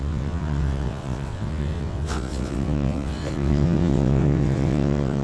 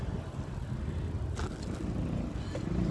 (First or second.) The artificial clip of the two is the first